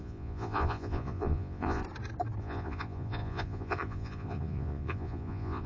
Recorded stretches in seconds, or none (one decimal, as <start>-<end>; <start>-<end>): 1.8-2.4

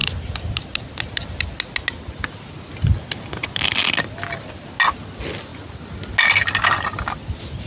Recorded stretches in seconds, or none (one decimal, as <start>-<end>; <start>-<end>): 0.0-7.7

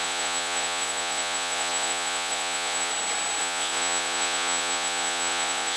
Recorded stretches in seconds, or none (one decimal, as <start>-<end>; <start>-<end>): 2.9-3.4

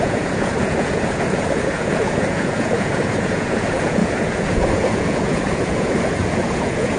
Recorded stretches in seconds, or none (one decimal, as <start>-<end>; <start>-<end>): none